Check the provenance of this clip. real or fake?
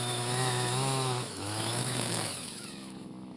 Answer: fake